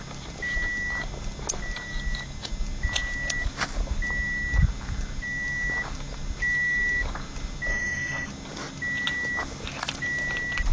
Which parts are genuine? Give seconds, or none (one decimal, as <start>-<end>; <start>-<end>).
0.0-7.7; 8.3-10.7